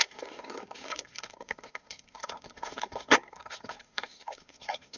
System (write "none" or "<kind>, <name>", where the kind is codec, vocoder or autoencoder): codec, SNAC